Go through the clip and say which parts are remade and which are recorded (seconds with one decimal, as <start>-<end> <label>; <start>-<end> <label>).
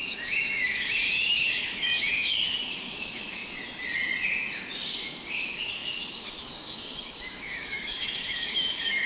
0.0-3.4 remade; 3.4-5.3 recorded; 5.3-9.1 remade